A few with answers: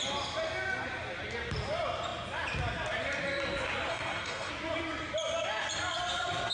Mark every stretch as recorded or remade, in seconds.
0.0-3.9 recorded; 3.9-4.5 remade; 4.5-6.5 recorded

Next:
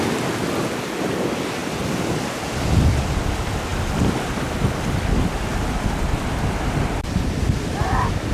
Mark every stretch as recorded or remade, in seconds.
0.0-8.3 recorded

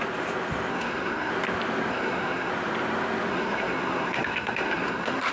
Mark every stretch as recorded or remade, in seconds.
0.0-0.7 recorded; 0.7-1.3 remade; 1.3-1.9 recorded; 1.9-2.5 remade; 2.5-3.3 recorded; 3.3-5.3 remade

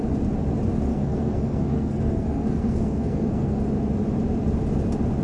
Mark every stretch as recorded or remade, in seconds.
0.0-0.9 recorded; 0.9-3.6 remade; 3.6-5.2 recorded

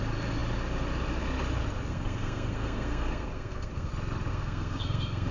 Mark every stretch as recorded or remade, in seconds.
0.0-1.9 recorded; 1.9-3.9 remade; 3.9-4.3 recorded; 4.3-5.3 remade

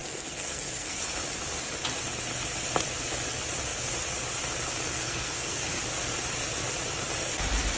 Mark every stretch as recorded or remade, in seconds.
0.0-1.0 remade; 1.0-4.8 recorded; 4.8-5.8 remade; 5.8-7.8 recorded

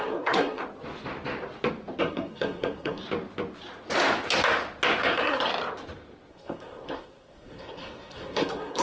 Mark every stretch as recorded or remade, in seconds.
0.0-0.6 remade; 0.6-2.0 recorded; 2.0-3.0 remade; 3.0-5.0 recorded; 5.0-5.5 remade; 5.5-6.3 recorded; 6.3-8.8 remade